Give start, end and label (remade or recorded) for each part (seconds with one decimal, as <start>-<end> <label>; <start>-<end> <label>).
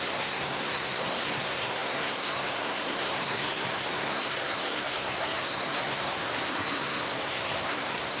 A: 0.0-8.2 remade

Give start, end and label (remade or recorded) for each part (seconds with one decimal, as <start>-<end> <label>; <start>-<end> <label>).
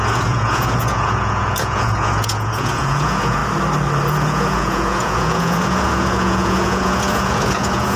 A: 0.0-3.4 remade; 3.4-4.1 recorded; 4.1-8.0 remade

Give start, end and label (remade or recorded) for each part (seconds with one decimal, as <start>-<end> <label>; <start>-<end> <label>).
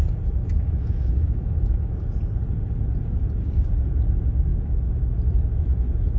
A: 0.0-0.4 recorded; 0.4-2.0 remade; 2.0-6.2 recorded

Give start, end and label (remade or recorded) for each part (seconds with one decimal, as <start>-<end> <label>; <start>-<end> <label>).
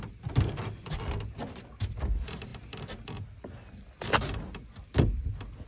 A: 0.0-5.7 recorded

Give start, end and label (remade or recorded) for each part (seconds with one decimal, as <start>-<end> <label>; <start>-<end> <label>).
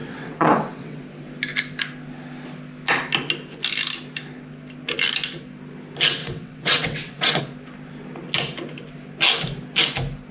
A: 0.0-1.0 remade; 1.0-6.2 recorded; 6.2-7.4 remade; 7.4-10.3 recorded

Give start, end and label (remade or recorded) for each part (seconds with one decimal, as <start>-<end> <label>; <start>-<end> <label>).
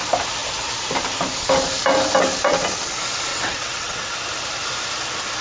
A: 0.0-3.3 recorded; 3.3-4.0 remade; 4.0-5.4 recorded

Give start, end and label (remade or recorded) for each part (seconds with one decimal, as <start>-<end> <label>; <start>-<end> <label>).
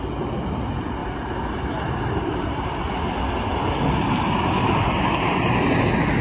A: 0.0-6.2 recorded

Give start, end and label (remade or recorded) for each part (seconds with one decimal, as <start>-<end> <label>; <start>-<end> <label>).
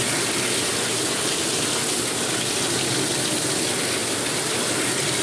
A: 0.0-5.2 remade